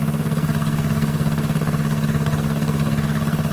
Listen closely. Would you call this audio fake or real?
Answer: fake